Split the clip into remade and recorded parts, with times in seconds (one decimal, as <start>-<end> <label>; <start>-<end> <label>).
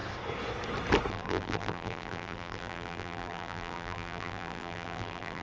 0.0-1.1 recorded; 1.1-5.4 remade